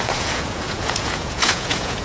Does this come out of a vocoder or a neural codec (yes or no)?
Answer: yes